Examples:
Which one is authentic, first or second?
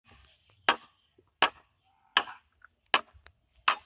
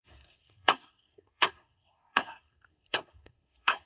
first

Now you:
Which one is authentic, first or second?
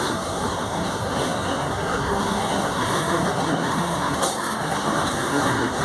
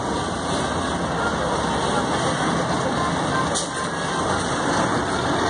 second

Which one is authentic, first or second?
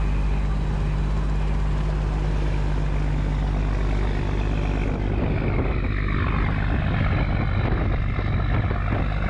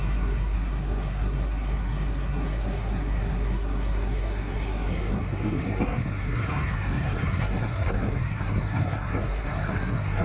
first